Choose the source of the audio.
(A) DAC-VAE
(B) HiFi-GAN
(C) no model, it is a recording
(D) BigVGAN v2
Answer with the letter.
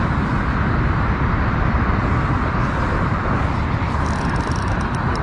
C